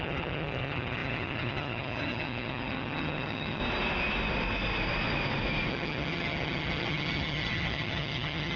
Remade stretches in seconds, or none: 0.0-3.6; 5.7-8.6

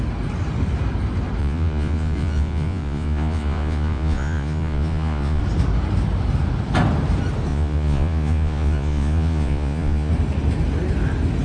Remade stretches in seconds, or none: 1.4-5.4; 7.5-10.1

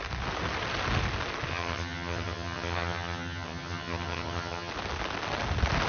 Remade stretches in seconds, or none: 1.5-4.7

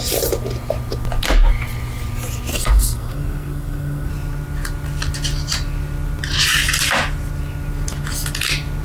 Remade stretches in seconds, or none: 2.5-4.1